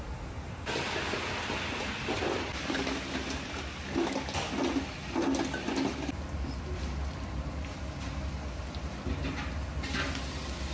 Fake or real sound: real